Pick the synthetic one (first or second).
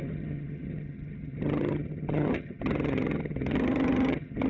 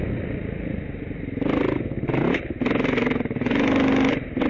first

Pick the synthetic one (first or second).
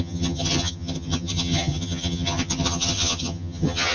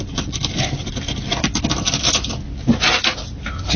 first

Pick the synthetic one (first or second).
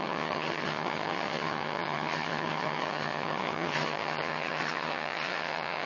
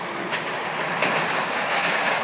first